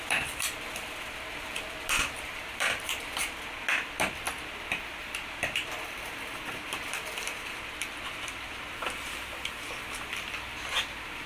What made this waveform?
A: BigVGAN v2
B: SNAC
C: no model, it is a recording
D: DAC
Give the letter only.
A